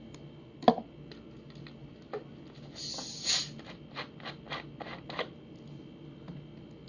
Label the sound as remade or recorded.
recorded